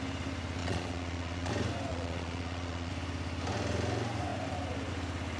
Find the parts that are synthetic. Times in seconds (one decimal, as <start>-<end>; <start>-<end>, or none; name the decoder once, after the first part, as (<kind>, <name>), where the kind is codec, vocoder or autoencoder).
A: 0.6-1.5 (vocoder, Vocos); 1.9-2.9